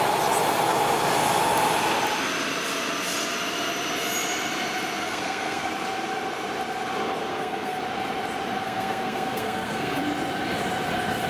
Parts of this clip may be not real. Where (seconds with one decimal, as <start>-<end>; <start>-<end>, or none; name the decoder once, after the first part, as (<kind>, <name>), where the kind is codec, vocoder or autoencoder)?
5.0-5.7 (codec, SNAC); 7.3-7.8; 8.6-10.0

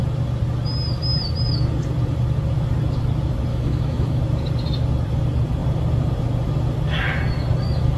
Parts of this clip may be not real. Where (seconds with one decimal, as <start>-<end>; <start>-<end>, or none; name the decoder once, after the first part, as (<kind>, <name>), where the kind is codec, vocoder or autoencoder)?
3.5-4.2 (autoencoder, DAC-VAE)

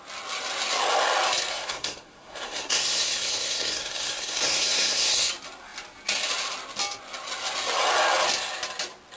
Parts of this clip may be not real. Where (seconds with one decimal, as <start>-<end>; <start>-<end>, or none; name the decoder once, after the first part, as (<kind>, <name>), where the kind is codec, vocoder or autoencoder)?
1.5-5.3 (codec, SNAC)